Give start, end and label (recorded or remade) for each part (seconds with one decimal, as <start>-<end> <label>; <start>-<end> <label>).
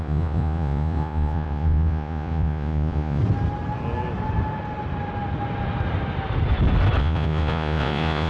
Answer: 0.0-3.2 remade; 3.2-7.0 recorded; 7.0-8.3 remade